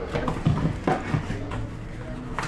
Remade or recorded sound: recorded